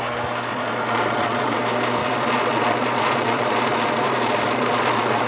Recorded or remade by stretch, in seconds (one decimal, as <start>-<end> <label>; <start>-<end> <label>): 0.0-0.5 recorded; 0.5-1.6 remade; 1.6-2.0 recorded; 2.0-5.3 remade